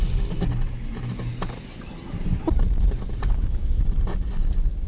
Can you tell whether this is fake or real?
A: real